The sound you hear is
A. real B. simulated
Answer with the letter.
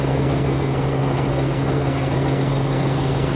B